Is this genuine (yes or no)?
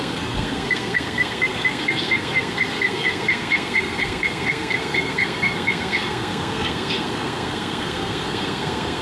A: no